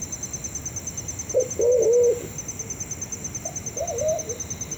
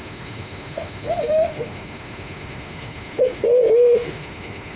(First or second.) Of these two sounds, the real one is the first